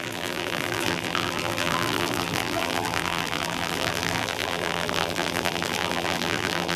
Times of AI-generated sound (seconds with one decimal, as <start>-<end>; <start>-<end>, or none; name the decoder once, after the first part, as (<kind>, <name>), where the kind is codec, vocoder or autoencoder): 0.0-6.8 (vocoder, BigVGAN v2)